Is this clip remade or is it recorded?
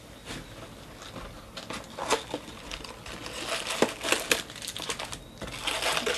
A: recorded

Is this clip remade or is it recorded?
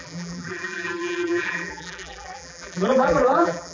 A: remade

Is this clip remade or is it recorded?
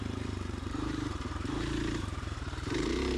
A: remade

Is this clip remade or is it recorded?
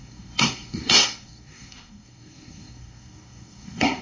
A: remade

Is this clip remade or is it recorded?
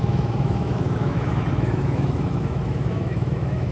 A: remade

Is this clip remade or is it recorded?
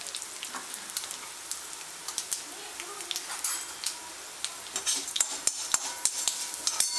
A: recorded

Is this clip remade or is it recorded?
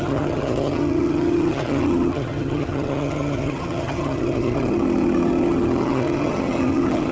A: remade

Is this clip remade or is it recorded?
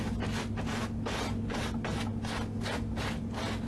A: recorded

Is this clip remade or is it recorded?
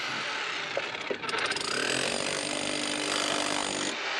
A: recorded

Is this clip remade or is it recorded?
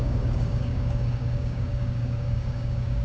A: remade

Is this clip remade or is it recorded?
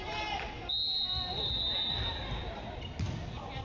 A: recorded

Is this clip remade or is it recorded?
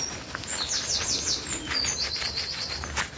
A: recorded